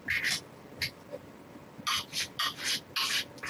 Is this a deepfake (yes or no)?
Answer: no